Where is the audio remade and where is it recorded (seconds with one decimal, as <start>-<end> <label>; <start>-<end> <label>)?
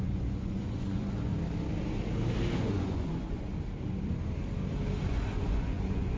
0.0-1.3 remade; 1.3-2.6 recorded; 2.6-3.5 remade; 3.5-5.1 recorded; 5.1-6.2 remade